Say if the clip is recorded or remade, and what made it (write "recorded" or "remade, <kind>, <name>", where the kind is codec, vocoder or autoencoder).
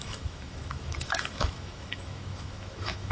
remade, autoencoder, DAC-VAE